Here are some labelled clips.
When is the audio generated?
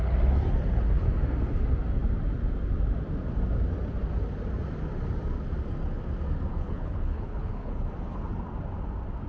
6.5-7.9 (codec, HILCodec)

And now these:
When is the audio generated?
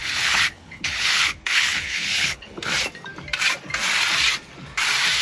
0.0-2.6 (codec, HILCodec)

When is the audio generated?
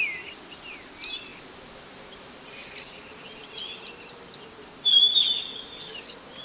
none